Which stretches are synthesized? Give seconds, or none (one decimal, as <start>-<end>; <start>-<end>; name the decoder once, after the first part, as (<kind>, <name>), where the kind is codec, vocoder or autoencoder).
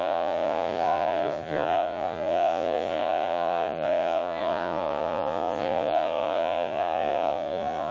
0.0-7.9 (vocoder, Vocos)